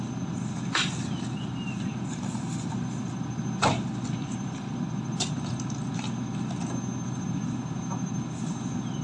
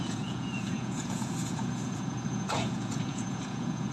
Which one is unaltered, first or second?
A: first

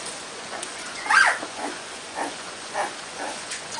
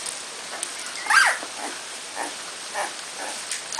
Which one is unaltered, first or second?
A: second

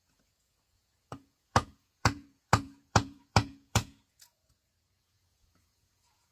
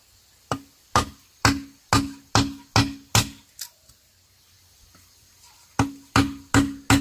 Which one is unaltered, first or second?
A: second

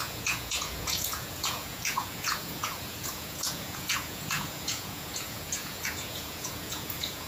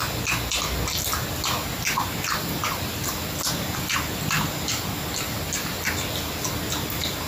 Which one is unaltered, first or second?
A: second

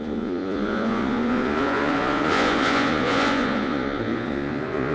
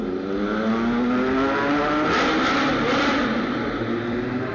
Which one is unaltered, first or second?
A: second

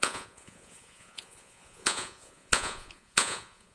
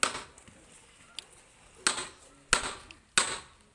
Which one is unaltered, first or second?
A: second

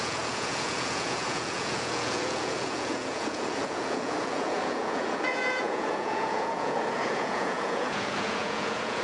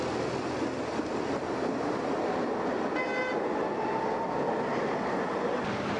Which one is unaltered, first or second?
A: second